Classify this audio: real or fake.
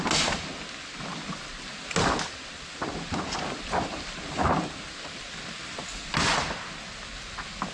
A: real